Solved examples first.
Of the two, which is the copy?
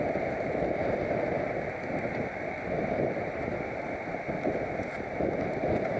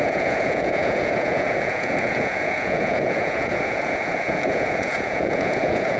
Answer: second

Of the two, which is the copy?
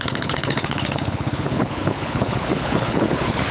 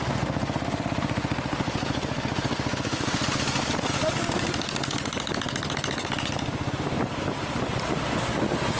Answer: first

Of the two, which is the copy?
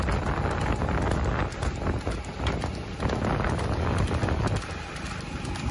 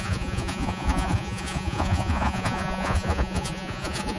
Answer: second